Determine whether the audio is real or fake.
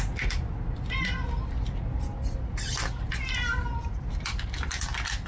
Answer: real